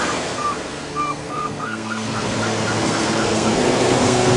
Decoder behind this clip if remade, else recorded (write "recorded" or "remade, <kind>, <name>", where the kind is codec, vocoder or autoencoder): remade, codec, SNAC